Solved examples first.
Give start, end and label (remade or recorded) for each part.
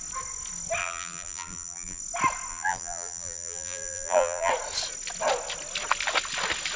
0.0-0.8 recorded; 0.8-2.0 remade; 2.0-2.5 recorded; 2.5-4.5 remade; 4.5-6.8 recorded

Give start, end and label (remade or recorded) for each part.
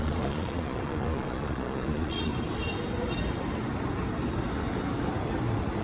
0.0-2.3 remade; 2.3-5.8 recorded